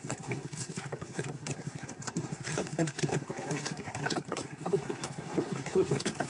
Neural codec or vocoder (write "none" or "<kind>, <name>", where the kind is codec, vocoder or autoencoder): codec, SNAC